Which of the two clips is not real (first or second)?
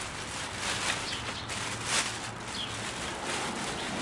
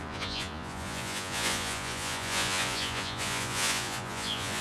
second